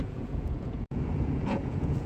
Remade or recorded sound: remade